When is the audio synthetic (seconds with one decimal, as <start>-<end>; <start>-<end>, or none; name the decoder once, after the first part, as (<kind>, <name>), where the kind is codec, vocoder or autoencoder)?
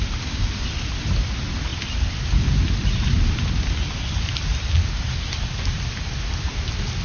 1.7-5.9 (vocoder, BigVGAN v2)